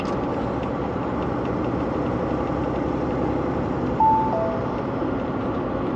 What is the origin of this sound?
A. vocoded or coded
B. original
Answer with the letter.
B